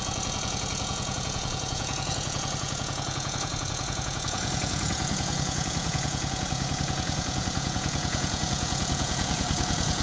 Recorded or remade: remade